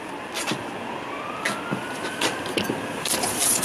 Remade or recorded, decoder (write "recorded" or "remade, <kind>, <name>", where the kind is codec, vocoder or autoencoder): recorded